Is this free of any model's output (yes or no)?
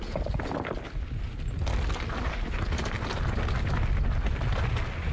yes